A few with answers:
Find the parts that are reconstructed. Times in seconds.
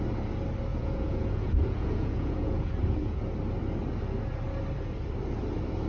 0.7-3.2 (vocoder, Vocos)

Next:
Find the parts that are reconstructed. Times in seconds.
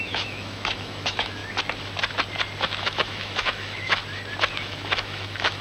0.0-1.4 (autoencoder, DAC-VAE); 2.6-4.0; 4.6-5.6